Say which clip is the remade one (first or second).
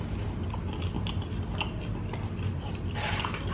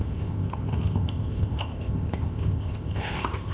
second